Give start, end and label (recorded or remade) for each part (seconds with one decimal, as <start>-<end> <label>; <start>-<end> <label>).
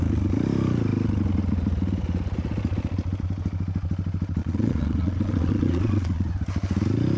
0.0-4.4 recorded; 4.4-6.3 remade; 6.3-7.2 recorded